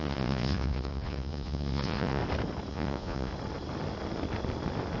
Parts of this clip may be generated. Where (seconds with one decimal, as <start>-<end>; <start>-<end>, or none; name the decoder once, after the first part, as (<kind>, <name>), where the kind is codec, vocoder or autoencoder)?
0.0-2.2 (vocoder, Vocos); 2.7-3.3

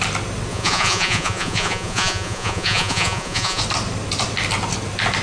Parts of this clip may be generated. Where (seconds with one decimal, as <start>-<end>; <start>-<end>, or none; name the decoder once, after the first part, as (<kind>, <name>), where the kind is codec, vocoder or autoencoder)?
0.5-3.6 (vocoder, Vocos)

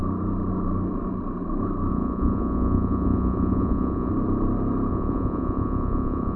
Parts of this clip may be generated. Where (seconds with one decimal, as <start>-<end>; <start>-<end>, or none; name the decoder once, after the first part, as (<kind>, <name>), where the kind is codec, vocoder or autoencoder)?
1.9-4.1 (vocoder, Vocos); 4.9-6.4